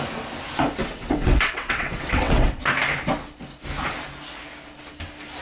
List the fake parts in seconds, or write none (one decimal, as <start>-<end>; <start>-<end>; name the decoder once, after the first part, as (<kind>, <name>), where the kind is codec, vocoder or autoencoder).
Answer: 0.8-2.6 (vocoder, WaveNeXt)